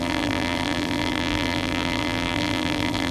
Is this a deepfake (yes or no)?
yes